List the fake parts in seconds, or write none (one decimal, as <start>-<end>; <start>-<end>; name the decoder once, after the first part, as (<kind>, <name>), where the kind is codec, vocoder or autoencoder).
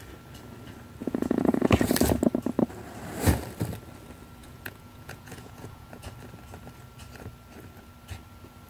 1.0-1.9 (vocoder, Vocos); 4.4-6.1